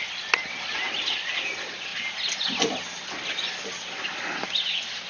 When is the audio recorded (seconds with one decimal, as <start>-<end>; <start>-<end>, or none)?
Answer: 0.0-5.1